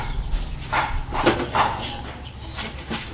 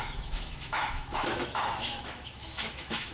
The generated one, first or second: second